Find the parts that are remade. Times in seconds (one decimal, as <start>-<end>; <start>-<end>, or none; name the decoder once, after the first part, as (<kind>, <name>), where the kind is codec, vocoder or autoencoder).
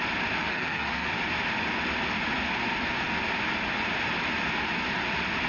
0.4-1.1 (codec, SNAC)